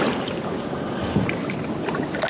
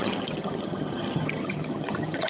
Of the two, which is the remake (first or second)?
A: second